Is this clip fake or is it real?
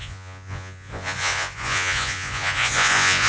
fake